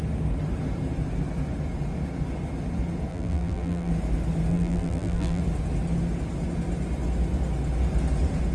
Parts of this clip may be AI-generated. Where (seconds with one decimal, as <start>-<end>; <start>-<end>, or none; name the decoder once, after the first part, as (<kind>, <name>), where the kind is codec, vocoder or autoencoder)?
3.1-3.9 (vocoder, BigVGAN v2); 4.5-5.4